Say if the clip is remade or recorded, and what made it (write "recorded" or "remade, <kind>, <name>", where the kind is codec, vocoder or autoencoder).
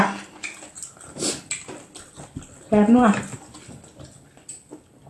recorded